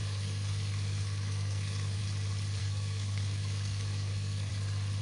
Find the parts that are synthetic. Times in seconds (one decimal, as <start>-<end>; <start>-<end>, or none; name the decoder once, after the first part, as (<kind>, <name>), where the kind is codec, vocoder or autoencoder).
0.0-2.0 (codec, SNAC); 2.6-4.5